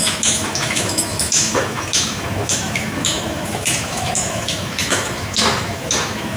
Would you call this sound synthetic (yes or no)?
yes